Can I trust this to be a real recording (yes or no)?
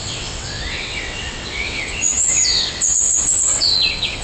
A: no